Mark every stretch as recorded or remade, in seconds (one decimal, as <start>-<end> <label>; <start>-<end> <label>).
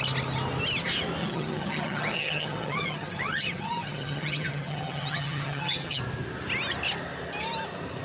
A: 0.0-1.2 recorded; 1.2-6.0 remade; 6.0-8.0 recorded